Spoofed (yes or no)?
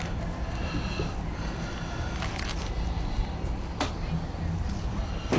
no